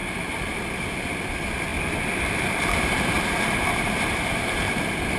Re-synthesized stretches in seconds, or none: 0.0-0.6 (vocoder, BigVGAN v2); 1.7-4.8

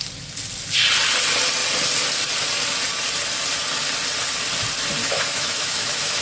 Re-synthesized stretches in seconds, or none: 5.0-6.2 (autoencoder, DAC-VAE)

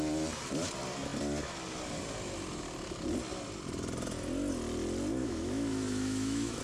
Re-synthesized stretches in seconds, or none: 5.2-6.6 (autoencoder, DAC-VAE)

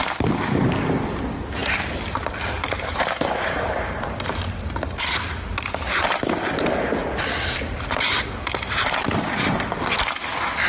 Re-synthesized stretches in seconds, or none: none

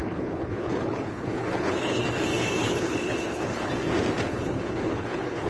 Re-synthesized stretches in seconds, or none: 0.0-2.0 (codec, HILCodec); 2.6-3.7; 4.3-5.5

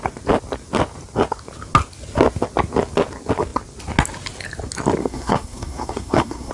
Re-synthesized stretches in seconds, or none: 5.0-6.5 (codec, SNAC)

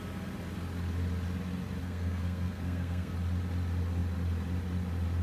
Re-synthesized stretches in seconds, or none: 1.8-3.1 (codec, SNAC)

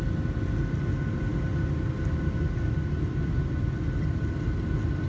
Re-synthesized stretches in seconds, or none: none